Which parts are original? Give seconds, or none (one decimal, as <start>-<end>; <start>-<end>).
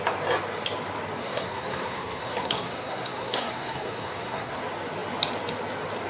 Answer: 0.0-1.2; 4.6-6.1